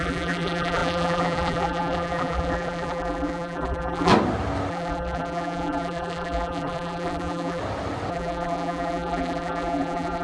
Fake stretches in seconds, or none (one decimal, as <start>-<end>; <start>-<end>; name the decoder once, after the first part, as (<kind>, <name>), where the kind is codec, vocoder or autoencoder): 0.0-4.1 (vocoder, BigVGAN v2); 4.7-7.6; 8.1-10.2